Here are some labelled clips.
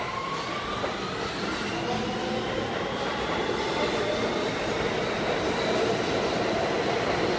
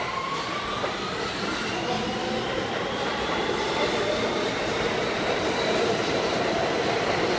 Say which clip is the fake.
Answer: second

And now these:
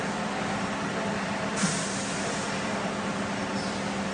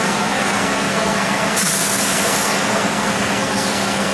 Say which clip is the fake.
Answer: second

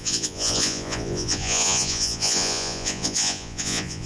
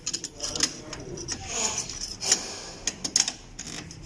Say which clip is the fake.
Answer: first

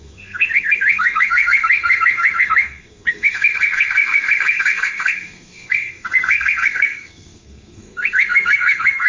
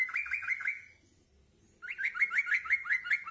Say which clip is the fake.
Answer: first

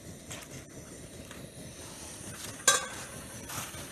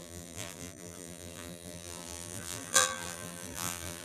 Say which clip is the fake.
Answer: second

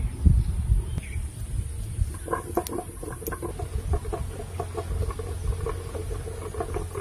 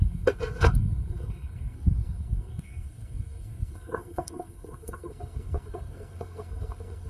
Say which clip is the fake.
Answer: second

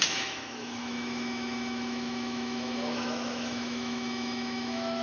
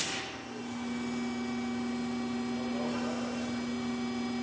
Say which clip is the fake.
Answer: first